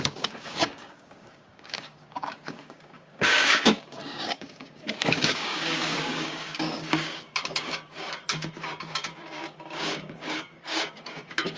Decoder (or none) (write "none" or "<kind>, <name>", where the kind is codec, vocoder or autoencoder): codec, DAC